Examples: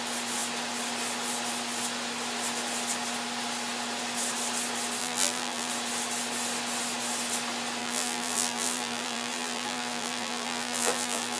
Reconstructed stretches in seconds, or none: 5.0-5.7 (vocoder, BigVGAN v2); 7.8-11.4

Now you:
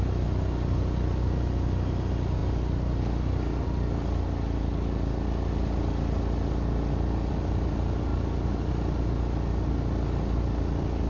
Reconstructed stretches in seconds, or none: none

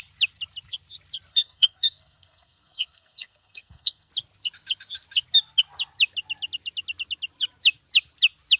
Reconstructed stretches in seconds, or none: 1.3-4.1 (codec, SNAC)

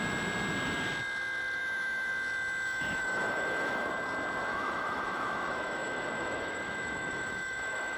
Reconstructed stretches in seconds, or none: 1.6-2.1 (autoencoder, DAC-VAE); 2.7-3.9; 4.5-8.0

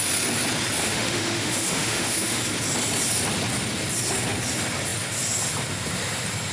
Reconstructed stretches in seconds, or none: 0.8-2.4 (autoencoder, DAC-VAE)

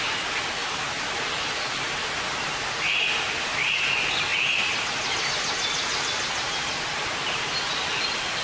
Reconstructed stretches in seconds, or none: 0.6-2.1 (vocoder, BigVGAN v2)

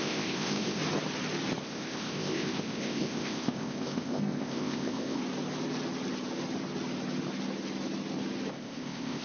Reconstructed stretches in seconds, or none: 0.0-0.8 (codec, ZipCodec); 1.6-5.2; 8.5-9.2